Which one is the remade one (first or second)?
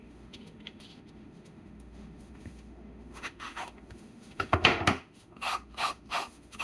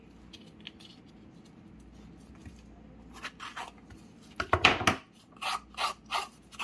first